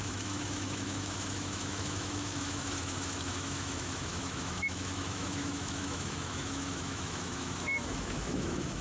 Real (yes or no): no